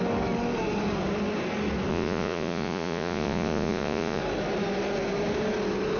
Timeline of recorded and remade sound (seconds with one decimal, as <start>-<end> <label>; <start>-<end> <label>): 0.0-1.9 recorded; 1.9-4.2 remade; 4.2-6.0 recorded